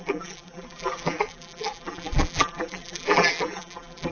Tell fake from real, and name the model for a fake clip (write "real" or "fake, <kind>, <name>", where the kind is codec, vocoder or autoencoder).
fake, vocoder, BigVGAN v2